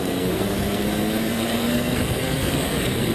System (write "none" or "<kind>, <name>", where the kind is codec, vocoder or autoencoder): codec, SNAC